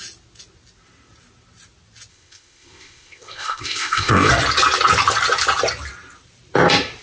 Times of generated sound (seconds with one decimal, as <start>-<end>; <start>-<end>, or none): 2.1-4.3